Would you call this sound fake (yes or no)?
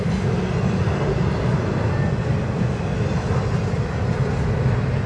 no